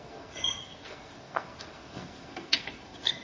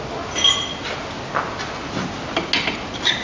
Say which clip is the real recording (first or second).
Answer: second